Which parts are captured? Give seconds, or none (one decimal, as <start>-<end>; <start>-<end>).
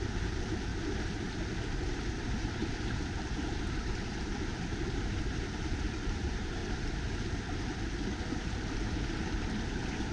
0.7-2.2; 6.6-8.4